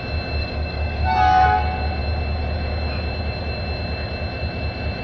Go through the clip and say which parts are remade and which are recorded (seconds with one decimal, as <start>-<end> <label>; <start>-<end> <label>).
0.0-0.4 recorded; 0.4-1.6 remade; 1.6-5.0 recorded